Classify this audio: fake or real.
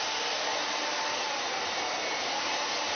real